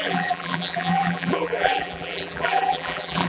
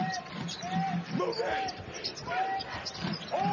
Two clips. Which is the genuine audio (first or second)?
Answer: second